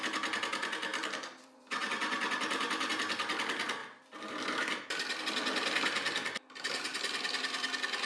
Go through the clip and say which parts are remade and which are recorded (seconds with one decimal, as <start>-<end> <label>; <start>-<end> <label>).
0.0-0.9 recorded; 0.9-2.9 remade; 2.9-3.8 recorded; 3.8-5.2 remade; 5.2-8.1 recorded

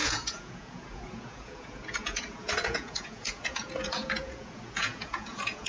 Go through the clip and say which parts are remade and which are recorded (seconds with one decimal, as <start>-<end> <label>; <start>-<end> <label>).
0.0-5.7 remade

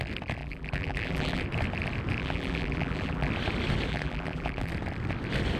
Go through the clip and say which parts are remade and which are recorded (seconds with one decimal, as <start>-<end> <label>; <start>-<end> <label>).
0.0-0.4 recorded; 0.4-1.4 remade; 1.4-2.2 recorded; 2.2-3.3 remade; 3.3-3.9 recorded; 3.9-4.7 remade; 4.7-5.6 recorded